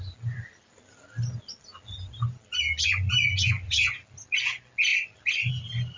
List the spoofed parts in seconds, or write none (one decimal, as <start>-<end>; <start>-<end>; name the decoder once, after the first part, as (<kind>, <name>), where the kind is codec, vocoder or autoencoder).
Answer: 4.9-5.5 (vocoder, BigVGAN v2)